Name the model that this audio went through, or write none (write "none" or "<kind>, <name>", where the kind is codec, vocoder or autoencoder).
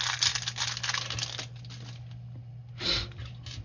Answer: none